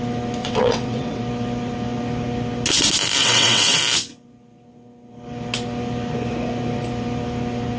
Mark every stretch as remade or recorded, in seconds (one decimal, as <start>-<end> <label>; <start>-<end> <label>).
0.0-0.4 recorded; 0.4-1.2 remade; 1.2-3.2 recorded; 3.2-3.8 remade; 3.8-7.8 recorded